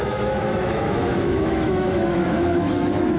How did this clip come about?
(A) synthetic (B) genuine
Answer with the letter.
A